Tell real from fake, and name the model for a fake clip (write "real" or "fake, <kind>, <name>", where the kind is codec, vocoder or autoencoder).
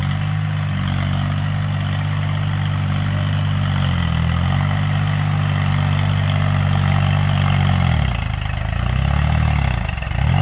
real